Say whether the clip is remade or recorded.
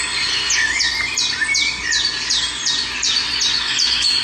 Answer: recorded